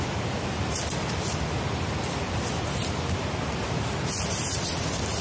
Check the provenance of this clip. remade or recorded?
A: recorded